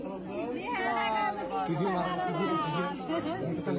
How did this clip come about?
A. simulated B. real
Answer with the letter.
B